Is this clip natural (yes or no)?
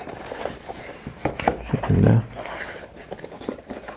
yes